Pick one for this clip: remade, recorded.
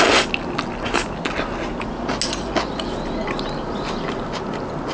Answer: recorded